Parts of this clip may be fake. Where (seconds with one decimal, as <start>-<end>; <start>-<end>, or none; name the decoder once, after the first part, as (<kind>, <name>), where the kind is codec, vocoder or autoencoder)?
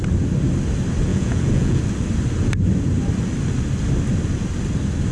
1.1-1.8 (vocoder, Vocos)